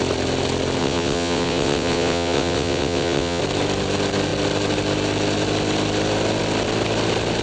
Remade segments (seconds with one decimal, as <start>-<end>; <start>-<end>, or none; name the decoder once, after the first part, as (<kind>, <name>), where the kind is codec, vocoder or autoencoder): 0.8-3.4 (vocoder, WaveNeXt)